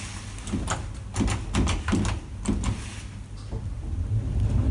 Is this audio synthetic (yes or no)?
no